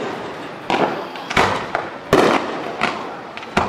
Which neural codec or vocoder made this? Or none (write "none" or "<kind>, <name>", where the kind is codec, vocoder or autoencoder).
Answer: none